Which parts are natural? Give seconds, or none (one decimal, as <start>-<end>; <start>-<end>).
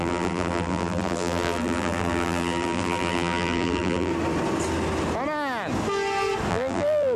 4.1-6.5